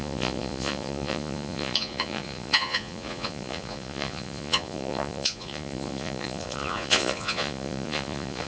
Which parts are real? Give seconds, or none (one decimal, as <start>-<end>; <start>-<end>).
none